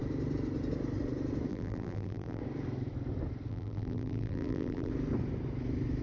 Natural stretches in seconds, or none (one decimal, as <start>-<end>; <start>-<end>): 0.0-1.5; 2.4-3.5; 4.9-6.0